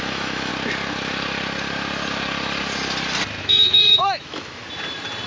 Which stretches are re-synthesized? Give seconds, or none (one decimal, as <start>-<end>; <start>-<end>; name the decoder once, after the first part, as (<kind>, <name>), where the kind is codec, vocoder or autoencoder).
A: 0.0-0.5 (autoencoder, DAC-VAE); 3.4-4.6